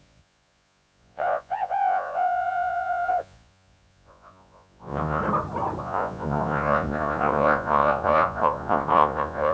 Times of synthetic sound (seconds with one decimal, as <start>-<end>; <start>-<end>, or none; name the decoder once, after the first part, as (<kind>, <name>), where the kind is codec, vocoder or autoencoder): 0.0-5.2 (vocoder, Vocos); 5.8-9.5